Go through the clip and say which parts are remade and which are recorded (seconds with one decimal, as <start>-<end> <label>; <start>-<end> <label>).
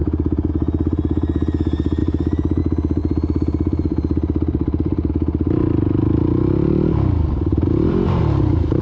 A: 0.0-0.5 remade; 0.5-2.0 recorded; 2.0-2.6 remade; 2.6-3.0 recorded; 3.0-5.1 remade; 5.1-7.5 recorded; 7.5-8.2 remade; 8.2-8.8 recorded